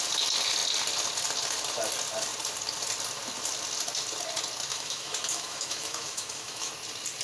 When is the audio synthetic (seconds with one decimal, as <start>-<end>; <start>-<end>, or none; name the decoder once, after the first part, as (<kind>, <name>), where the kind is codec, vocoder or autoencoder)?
4.7-6.7 (autoencoder, DAC-VAE)